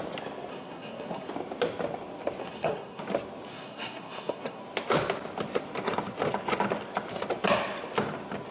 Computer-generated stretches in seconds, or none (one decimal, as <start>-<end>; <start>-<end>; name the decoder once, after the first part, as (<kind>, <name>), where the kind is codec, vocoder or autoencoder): 0.5-1.3 (codec, SNAC); 2.4-3.0; 3.5-4.6